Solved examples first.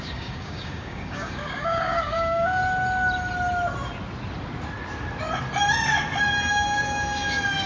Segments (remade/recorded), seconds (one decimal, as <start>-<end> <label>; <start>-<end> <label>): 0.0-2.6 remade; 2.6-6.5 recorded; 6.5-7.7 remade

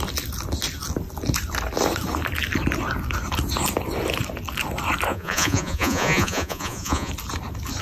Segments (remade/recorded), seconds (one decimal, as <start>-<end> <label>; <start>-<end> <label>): 0.0-5.1 recorded; 5.1-7.1 remade; 7.1-7.8 recorded

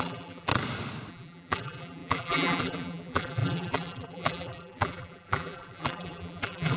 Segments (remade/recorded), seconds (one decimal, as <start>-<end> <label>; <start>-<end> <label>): 0.0-0.5 remade; 0.5-1.1 recorded; 1.1-6.8 remade